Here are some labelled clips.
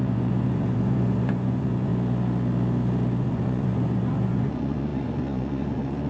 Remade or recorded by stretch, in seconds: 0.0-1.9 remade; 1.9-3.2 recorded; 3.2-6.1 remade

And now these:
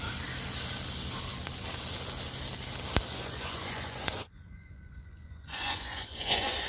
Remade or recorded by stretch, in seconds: 0.0-3.1 recorded; 3.1-6.7 remade

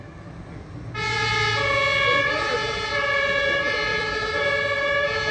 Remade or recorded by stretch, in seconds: 0.0-5.3 recorded